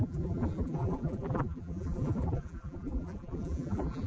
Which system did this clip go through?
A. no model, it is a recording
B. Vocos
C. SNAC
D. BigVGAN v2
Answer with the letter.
D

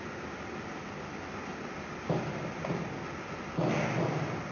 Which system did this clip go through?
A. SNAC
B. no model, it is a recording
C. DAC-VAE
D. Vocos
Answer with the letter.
B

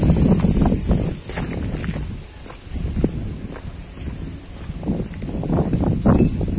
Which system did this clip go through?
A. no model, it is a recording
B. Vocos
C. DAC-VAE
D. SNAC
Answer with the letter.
A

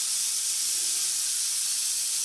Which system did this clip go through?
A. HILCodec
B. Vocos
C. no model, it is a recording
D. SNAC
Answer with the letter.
C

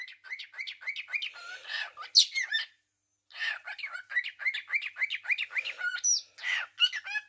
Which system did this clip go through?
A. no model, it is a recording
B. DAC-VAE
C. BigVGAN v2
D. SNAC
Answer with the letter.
A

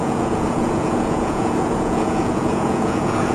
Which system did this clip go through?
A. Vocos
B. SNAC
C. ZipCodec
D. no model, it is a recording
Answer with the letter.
A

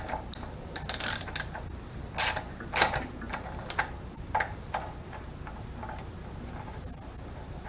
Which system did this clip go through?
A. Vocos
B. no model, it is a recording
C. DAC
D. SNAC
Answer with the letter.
B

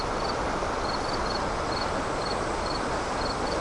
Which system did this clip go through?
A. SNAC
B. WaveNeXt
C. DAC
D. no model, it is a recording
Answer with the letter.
D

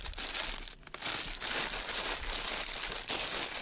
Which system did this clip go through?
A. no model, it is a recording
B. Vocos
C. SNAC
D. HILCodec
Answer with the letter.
A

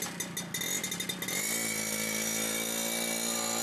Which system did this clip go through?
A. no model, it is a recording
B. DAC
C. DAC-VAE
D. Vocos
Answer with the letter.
A